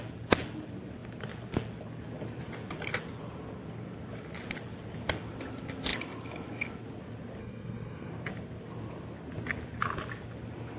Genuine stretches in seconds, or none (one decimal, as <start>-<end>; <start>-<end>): 0.0-7.4; 8.1-10.8